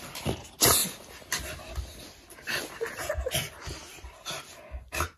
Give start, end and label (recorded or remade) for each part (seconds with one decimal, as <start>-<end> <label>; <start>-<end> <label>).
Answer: 0.0-5.2 recorded